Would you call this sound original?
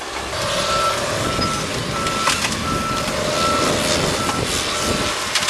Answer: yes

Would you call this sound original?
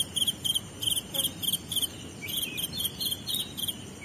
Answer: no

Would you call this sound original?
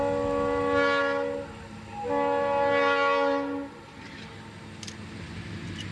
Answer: yes